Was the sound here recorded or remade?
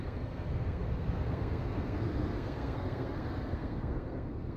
remade